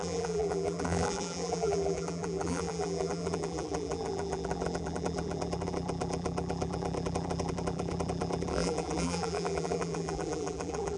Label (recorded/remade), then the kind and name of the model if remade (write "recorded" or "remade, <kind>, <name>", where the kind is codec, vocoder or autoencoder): remade, vocoder, BigVGAN v2